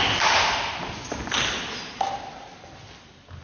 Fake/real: real